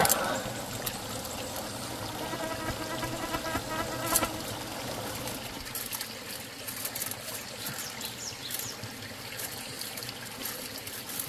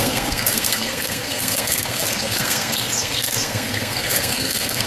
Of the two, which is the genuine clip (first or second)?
first